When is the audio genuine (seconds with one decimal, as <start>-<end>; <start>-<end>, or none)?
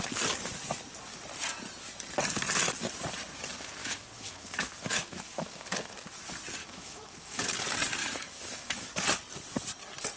0.0-3.8; 5.2-6.6; 7.4-8.0; 8.9-10.2